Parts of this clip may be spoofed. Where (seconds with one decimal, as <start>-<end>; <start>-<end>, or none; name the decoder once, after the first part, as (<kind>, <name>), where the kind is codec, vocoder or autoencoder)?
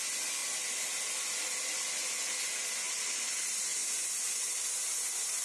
none